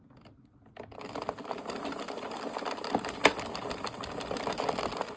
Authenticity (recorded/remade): recorded